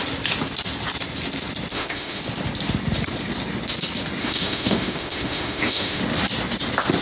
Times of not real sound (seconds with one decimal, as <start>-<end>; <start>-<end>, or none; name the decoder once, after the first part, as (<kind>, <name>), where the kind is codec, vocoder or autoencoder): 1.7-2.2 (autoencoder, DAC-VAE); 4.2-6.0